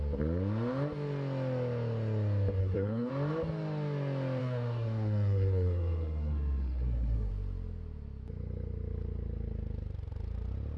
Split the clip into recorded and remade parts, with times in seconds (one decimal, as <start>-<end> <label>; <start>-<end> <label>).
0.0-2.6 recorded; 2.6-3.1 remade; 3.1-4.4 recorded; 4.4-7.3 remade; 7.3-10.8 recorded